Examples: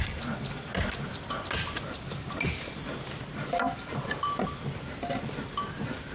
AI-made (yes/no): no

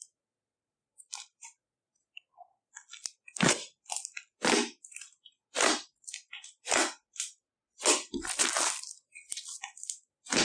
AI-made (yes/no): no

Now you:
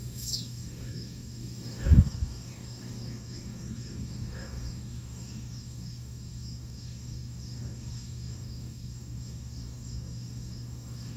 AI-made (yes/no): yes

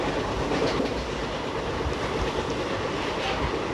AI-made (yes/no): no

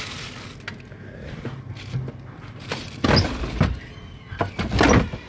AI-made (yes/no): no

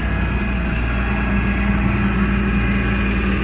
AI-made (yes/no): no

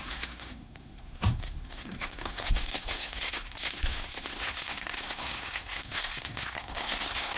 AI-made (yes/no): yes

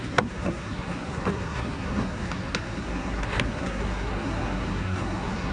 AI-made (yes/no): yes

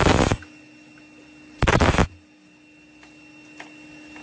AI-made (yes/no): no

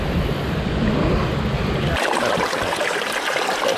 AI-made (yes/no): no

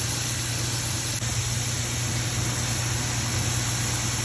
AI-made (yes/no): no